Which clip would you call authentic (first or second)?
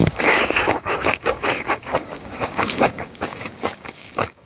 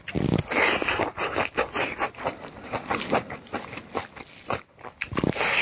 second